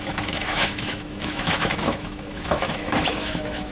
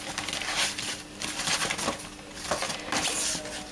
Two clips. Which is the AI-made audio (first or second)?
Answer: first